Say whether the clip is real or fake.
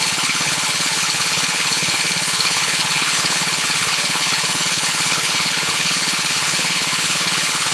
fake